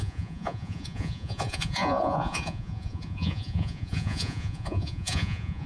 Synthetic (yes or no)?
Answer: yes